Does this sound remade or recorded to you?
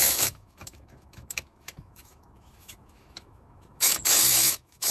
remade